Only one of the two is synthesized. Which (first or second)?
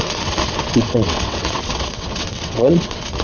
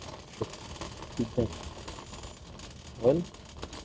first